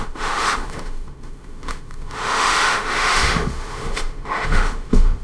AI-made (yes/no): yes